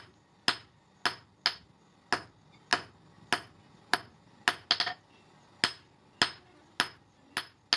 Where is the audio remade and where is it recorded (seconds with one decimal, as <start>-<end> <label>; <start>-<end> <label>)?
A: 0.0-7.8 recorded